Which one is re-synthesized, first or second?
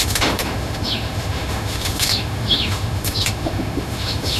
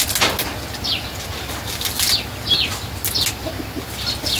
first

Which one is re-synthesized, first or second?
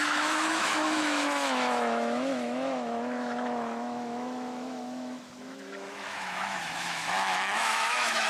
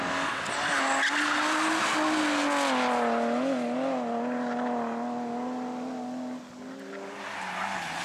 first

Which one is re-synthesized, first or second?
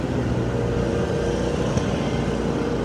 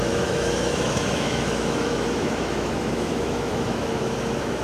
second